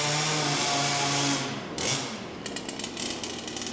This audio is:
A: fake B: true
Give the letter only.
B